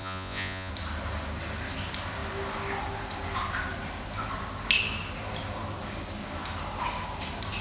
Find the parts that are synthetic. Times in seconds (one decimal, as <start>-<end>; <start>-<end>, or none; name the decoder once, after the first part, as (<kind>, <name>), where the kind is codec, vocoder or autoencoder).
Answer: 0.0-0.7 (vocoder, Vocos)

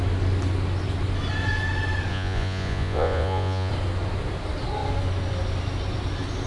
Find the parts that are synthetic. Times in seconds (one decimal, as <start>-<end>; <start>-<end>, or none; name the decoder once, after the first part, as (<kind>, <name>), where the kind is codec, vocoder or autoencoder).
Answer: 2.1-3.7 (vocoder, Vocos)

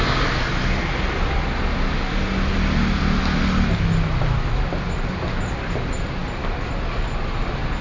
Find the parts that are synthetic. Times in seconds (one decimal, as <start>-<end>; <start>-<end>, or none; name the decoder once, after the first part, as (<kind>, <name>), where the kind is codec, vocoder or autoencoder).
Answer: none

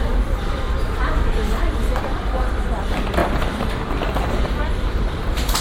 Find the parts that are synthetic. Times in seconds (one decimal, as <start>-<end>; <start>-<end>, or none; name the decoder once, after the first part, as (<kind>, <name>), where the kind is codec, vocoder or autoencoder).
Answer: 0.0-3.2 (vocoder, BigVGAN v2); 4.3-5.6

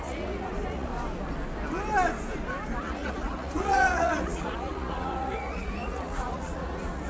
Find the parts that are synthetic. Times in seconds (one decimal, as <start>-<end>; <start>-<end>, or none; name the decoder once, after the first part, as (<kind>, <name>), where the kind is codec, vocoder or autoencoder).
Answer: 0.0-0.9 (vocoder, Vocos); 2.8-7.1

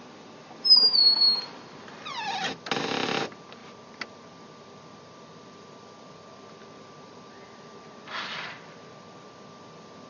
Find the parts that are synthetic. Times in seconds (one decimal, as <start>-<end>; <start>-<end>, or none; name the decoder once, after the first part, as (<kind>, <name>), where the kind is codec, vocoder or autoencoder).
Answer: none

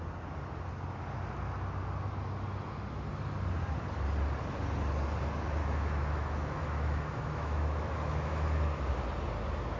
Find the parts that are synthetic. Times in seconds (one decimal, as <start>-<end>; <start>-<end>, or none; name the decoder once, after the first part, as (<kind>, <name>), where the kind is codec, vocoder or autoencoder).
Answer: 5.6-8.8 (autoencoder, DAC-VAE)